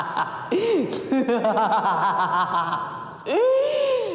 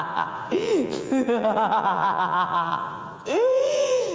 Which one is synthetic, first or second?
second